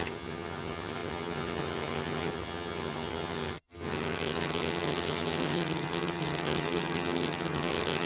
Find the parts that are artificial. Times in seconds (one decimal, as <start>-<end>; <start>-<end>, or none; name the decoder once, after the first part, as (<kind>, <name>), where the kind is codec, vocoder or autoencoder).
0.0-8.1 (vocoder, HiFi-GAN)